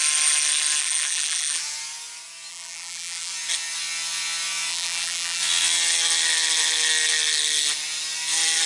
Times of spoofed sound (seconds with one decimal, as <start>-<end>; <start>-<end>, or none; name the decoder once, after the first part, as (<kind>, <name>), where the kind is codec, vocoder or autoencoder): 0.8-1.6 (vocoder, BigVGAN v2); 2.5-3.3; 4.7-5.4